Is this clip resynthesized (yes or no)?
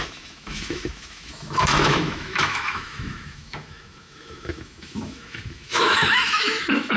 yes